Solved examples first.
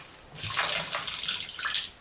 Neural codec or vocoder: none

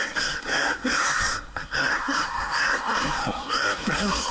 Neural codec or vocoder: codec, SNAC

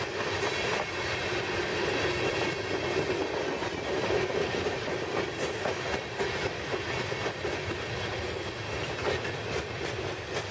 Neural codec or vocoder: none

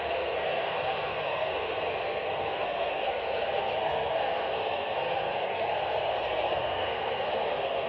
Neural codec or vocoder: codec, SNAC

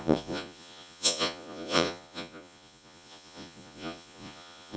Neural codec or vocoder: vocoder, Vocos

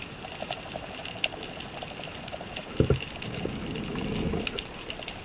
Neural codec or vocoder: none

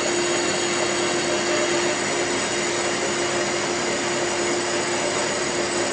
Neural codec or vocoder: none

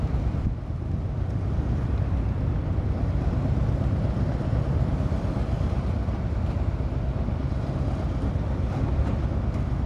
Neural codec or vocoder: none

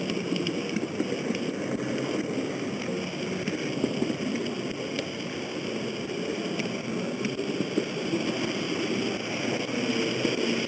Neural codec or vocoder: none